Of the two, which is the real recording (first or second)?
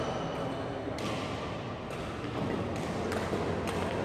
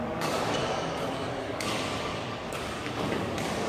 first